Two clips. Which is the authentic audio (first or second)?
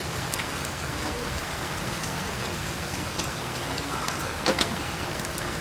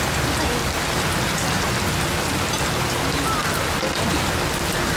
second